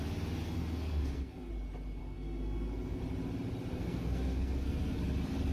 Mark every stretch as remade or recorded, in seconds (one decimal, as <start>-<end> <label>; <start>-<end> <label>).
0.0-0.4 recorded; 0.4-1.5 remade; 1.5-2.0 recorded; 2.0-3.0 remade; 3.0-3.8 recorded; 3.8-5.0 remade; 5.0-5.5 recorded